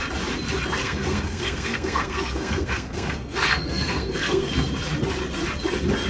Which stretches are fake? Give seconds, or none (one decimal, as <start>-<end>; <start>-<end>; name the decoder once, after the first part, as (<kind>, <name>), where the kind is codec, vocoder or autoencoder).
0.8-4.5 (codec, SNAC)